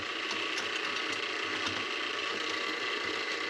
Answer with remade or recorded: recorded